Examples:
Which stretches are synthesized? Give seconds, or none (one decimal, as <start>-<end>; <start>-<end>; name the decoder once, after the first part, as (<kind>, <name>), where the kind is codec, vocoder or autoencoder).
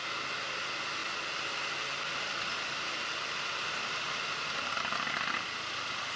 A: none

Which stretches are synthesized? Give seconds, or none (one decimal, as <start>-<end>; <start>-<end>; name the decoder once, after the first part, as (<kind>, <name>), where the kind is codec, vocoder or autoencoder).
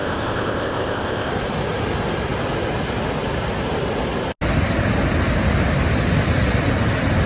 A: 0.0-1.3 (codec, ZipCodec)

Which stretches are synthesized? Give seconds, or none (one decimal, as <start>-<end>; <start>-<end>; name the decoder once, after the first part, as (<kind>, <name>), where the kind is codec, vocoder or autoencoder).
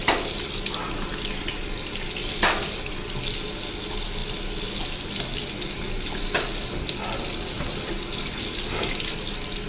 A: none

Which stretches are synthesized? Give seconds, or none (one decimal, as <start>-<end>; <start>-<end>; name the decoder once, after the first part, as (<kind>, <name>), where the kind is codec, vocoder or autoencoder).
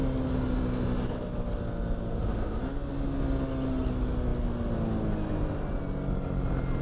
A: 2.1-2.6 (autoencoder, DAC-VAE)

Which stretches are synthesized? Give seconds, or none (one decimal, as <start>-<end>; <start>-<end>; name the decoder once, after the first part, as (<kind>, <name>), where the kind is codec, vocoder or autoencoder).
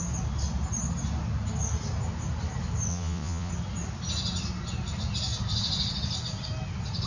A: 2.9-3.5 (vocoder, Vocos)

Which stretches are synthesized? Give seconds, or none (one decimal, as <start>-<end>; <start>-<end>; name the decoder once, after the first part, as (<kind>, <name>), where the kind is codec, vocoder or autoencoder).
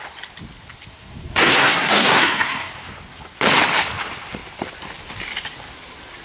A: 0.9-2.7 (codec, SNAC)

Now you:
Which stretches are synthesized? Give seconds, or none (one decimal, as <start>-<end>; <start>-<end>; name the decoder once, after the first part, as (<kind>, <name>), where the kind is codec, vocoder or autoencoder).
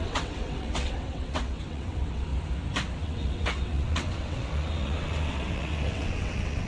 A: 0.0-2.3 (vocoder, WaveNeXt); 3.0-6.7